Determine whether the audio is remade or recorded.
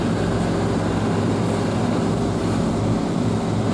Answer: recorded